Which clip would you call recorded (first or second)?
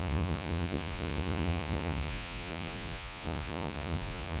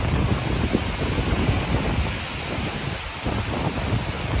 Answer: second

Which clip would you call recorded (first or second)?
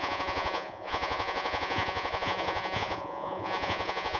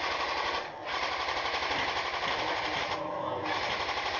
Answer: second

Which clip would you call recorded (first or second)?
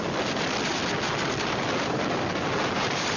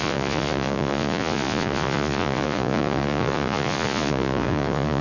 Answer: first